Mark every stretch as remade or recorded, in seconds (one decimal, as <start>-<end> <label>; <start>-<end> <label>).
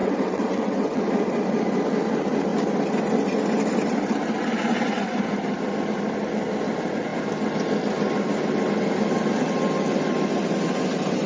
0.0-1.0 remade; 1.0-11.3 recorded